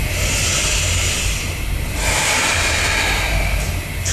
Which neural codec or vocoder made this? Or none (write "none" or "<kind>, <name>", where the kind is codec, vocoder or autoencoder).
none